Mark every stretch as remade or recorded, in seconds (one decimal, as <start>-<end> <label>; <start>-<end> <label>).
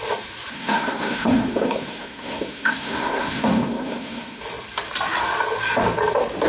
0.0-0.5 recorded; 0.5-4.4 remade; 4.4-6.5 recorded